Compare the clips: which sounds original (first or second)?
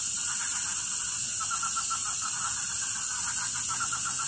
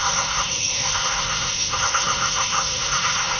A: first